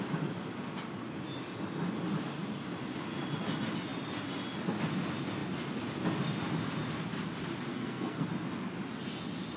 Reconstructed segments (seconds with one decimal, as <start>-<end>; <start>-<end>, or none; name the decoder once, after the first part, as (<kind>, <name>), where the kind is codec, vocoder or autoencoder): 7.7-8.3 (codec, SNAC)